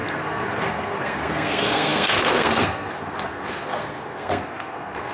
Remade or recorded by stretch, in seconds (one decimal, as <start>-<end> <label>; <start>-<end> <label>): 0.0-5.1 remade